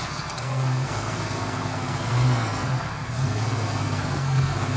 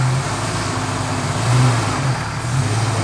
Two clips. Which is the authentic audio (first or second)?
second